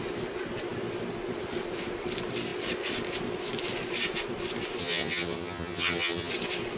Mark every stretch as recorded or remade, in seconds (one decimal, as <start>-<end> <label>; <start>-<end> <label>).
0.0-4.8 recorded; 4.8-6.3 remade; 6.3-6.8 recorded